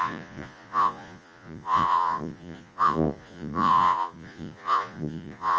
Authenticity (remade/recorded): remade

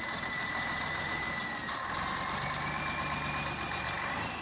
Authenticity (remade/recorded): recorded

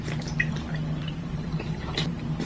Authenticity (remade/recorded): recorded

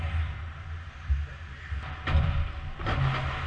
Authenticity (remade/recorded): recorded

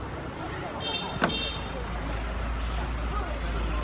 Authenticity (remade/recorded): recorded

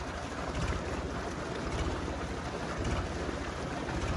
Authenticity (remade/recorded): recorded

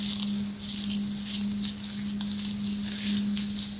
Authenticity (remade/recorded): recorded